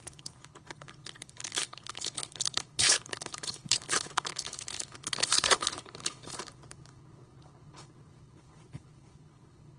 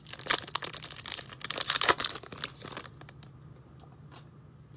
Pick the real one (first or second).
second